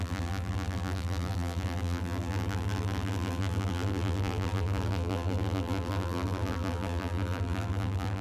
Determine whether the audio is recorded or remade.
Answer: remade